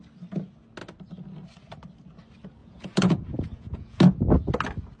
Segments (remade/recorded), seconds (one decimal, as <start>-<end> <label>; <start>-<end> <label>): 0.0-2.6 recorded; 2.6-4.0 remade; 4.0-5.0 recorded

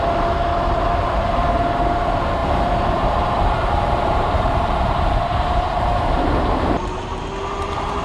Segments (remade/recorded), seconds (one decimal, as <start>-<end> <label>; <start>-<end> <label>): 0.0-2.4 recorded; 2.4-6.2 remade; 6.2-8.0 recorded

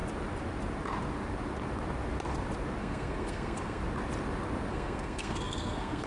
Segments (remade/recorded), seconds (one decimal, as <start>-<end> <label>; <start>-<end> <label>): 0.0-2.8 recorded; 2.8-3.8 remade; 3.8-4.7 recorded; 4.7-6.1 remade

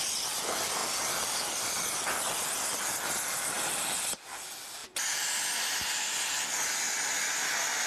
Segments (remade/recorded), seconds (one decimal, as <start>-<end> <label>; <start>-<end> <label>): 0.0-7.9 recorded

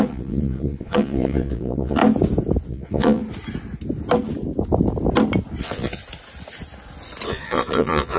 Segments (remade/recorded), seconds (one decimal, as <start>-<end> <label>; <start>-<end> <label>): 0.0-2.0 remade; 2.0-2.7 recorded; 2.7-3.2 remade; 3.2-5.6 recorded; 5.6-6.0 remade; 6.0-7.3 recorded; 7.3-8.2 remade

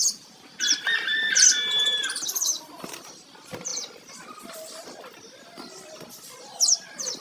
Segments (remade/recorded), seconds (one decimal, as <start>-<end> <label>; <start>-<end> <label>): 0.0-0.6 remade; 0.6-7.2 recorded